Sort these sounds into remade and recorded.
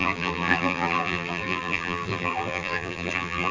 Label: remade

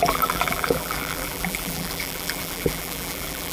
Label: remade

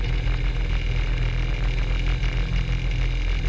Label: recorded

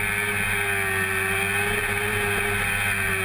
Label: recorded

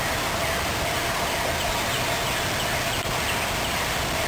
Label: remade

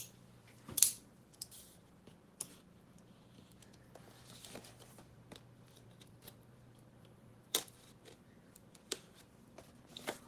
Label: remade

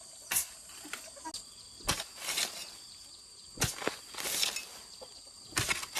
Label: recorded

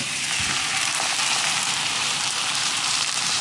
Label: remade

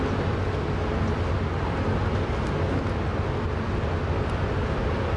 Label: recorded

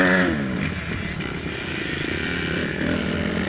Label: recorded